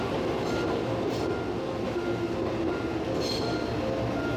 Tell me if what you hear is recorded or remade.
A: recorded